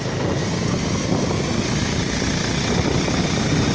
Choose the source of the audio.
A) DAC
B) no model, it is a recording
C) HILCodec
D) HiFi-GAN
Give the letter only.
B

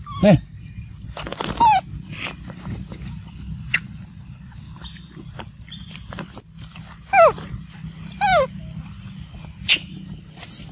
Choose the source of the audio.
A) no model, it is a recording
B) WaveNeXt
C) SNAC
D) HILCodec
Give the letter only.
A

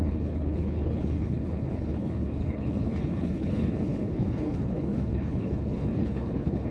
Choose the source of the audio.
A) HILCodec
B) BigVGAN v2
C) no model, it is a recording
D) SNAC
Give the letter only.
A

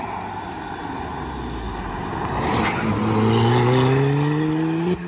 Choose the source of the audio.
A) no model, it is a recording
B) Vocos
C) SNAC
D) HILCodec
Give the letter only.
A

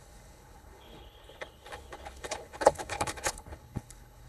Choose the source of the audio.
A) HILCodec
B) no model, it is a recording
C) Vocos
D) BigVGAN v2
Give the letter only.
A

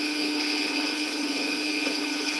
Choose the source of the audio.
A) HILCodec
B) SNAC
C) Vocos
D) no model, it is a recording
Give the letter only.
A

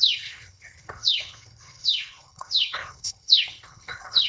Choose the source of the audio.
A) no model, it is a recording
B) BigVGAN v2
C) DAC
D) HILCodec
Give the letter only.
D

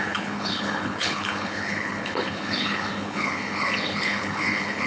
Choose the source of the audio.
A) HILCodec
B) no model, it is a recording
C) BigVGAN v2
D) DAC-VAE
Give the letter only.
A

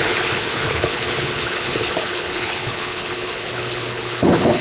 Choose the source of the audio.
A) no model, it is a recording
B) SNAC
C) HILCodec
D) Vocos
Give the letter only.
C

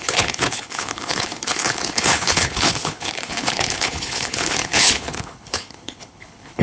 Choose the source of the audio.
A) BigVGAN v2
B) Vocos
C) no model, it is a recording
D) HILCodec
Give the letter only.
D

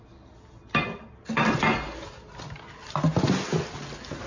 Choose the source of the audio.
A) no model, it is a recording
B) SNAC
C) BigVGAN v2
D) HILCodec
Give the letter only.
A